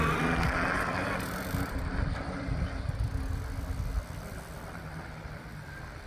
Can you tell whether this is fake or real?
real